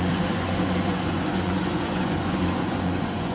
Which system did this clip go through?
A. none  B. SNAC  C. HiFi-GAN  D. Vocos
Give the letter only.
D